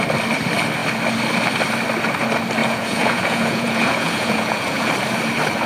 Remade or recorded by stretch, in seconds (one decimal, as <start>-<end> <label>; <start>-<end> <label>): 0.0-2.6 recorded; 2.6-4.9 remade; 4.9-5.7 recorded